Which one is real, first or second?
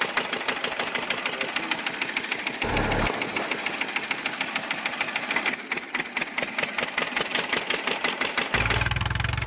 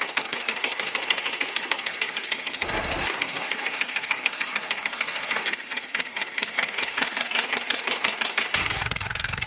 first